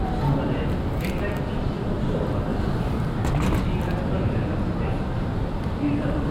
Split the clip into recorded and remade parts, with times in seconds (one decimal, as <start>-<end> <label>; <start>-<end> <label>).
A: 0.0-2.5 remade; 2.5-3.4 recorded; 3.4-6.3 remade